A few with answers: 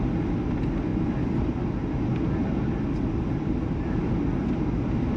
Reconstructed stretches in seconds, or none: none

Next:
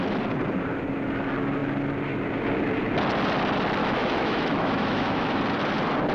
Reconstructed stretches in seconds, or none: 3.8-5.4 (autoencoder, DAC-VAE)

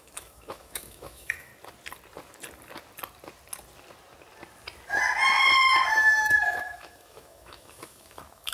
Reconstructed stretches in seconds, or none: 0.0-1.5 (autoencoder, DAC-VAE); 5.9-8.5

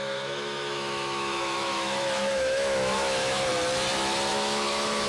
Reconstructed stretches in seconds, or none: 0.0-3.5 (autoencoder, DAC-VAE); 4.3-5.1

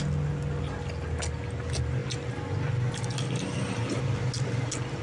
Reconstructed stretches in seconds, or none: none